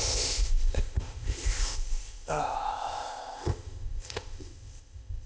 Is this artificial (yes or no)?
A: yes